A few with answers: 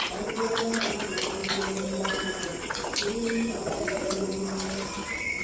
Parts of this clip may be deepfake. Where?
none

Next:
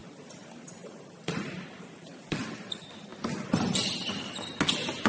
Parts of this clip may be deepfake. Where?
0.0-2.4 (vocoder, BigVGAN v2)

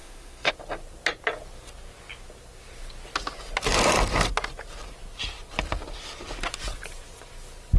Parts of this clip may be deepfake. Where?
0.0-0.5 (autoencoder, DAC-VAE)